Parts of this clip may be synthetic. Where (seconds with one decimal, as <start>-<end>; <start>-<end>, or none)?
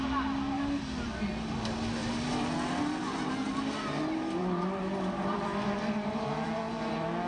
2.0-3.3; 4.4-6.7